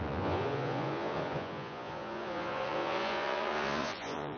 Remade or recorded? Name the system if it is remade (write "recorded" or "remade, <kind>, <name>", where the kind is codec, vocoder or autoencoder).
remade, vocoder, Vocos